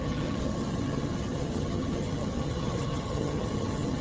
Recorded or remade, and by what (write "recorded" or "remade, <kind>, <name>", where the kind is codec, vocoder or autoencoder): remade, vocoder, HiFi-GAN